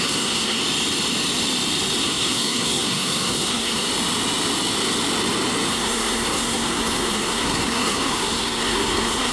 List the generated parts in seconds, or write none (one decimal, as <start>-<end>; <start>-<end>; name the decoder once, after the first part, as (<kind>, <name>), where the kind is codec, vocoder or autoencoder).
0.0-0.6 (codec, SNAC); 2.0-3.9; 5.7-9.3